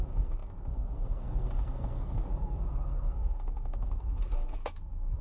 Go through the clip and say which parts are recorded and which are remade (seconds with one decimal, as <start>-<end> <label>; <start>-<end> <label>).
0.0-5.2 remade